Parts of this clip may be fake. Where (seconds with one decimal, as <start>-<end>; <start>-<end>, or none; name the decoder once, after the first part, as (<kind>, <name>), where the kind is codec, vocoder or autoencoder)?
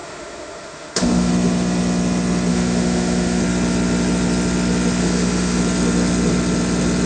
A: 0.0-1.3 (autoencoder, DAC-VAE); 2.5-3.4; 5.0-5.6